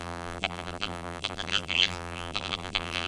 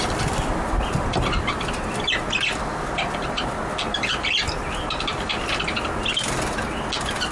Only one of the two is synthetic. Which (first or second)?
first